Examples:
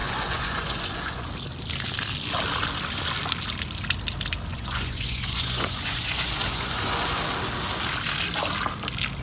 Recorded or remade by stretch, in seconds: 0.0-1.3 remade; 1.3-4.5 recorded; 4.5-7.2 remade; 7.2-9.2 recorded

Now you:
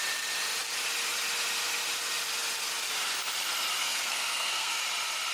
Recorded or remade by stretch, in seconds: 0.0-3.8 recorded; 3.8-4.8 remade; 4.8-5.3 recorded

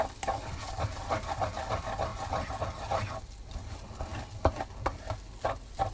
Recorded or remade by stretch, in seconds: 0.0-5.9 recorded